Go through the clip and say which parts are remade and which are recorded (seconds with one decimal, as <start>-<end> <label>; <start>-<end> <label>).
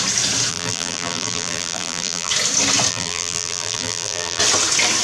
0.0-0.5 recorded; 0.5-2.3 remade; 2.3-2.9 recorded; 2.9-4.4 remade; 4.4-5.0 recorded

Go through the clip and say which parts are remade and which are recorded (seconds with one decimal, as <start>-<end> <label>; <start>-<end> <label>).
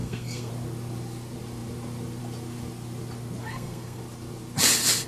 0.0-0.5 remade; 0.5-3.4 recorded; 3.4-4.0 remade; 4.0-5.1 recorded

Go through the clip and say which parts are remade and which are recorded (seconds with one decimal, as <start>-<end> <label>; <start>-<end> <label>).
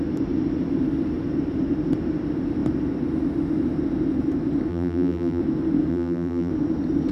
0.0-4.7 recorded; 4.7-5.4 remade; 5.4-5.9 recorded; 5.9-6.5 remade; 6.5-7.1 recorded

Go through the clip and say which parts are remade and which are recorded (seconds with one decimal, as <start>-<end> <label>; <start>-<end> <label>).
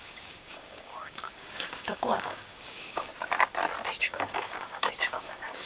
0.0-3.1 remade; 3.1-4.0 recorded; 4.0-5.7 remade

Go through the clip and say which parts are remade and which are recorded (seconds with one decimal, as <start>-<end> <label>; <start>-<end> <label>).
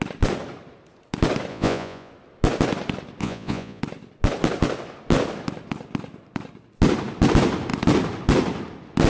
0.0-1.5 recorded; 1.5-2.1 remade; 2.1-3.2 recorded; 3.2-3.8 remade; 3.8-9.1 recorded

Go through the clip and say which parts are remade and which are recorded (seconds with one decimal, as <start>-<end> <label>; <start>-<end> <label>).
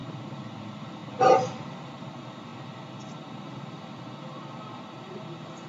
0.0-0.6 remade; 0.6-1.0 recorded; 1.0-2.1 remade; 2.1-5.7 recorded